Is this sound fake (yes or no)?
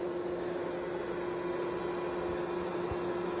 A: no